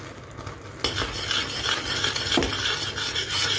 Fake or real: real